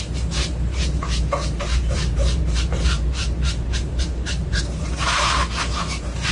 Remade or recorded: remade